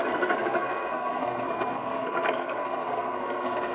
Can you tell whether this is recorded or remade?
remade